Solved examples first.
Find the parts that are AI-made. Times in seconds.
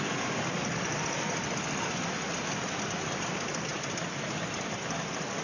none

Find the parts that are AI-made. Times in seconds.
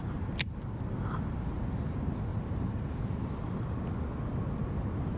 2.3-3.0